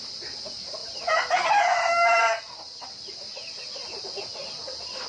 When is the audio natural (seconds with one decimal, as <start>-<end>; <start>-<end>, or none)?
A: 0.0-5.1